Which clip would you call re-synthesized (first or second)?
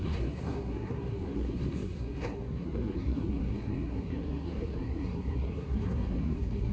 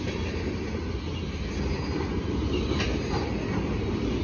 first